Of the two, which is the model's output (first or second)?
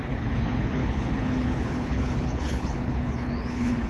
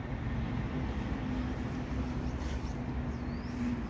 first